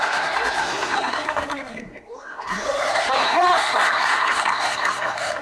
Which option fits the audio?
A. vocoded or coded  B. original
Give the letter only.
A